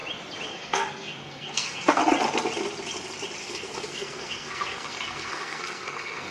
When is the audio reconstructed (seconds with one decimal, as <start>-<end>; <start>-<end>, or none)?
0.5-2.0; 3.4-6.3